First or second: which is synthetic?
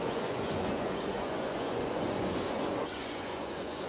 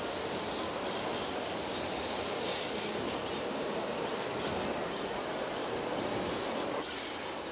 first